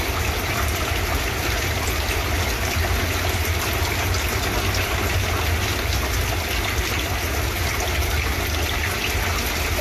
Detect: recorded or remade recorded